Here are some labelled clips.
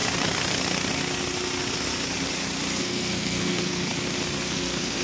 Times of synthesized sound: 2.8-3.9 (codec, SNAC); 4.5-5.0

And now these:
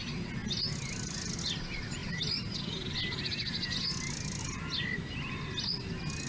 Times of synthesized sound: none

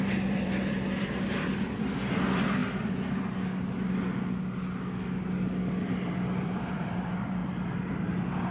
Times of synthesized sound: 0.0-2.6 (vocoder, BigVGAN v2); 5.9-8.5

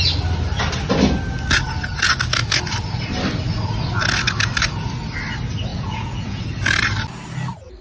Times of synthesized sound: 5.7-6.4 (vocoder, Vocos)

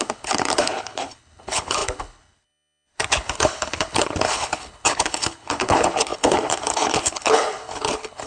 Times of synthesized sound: 0.0-8.3 (codec, HILCodec)

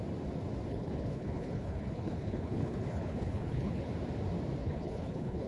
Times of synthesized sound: 0.7-3.9 (codec, HILCodec); 4.6-5.5

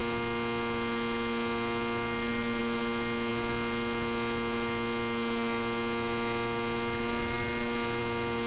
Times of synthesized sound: none

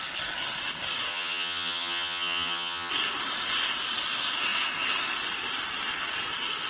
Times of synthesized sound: 1.1-2.9 (vocoder, HiFi-GAN)